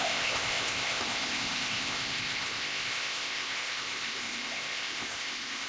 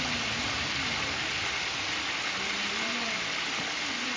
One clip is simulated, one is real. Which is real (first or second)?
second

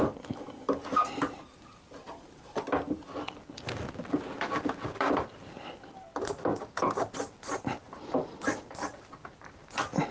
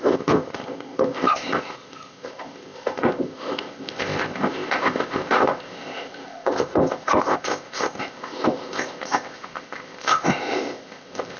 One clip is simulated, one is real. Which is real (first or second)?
first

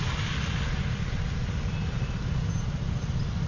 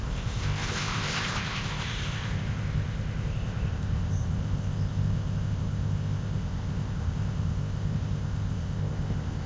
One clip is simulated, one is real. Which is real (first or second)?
first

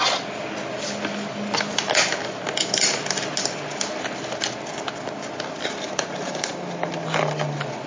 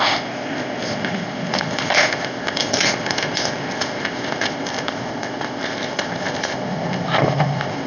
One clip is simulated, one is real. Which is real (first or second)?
first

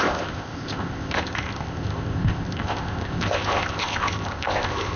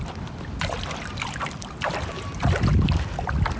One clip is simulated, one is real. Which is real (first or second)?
second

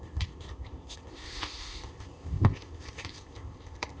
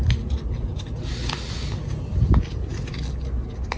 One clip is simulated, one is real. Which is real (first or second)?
second